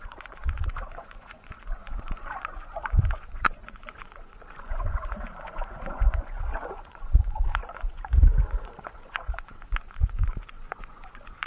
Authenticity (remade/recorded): remade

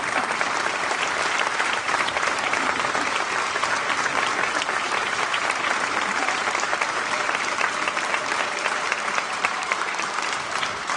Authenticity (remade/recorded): remade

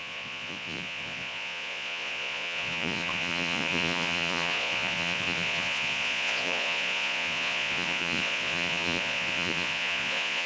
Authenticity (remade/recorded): remade